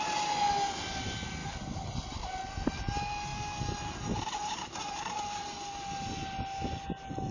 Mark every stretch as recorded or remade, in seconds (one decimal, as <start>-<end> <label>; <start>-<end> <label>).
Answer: 0.0-7.3 recorded